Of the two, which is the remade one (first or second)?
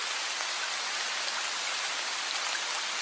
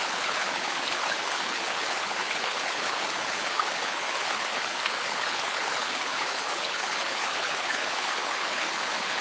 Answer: second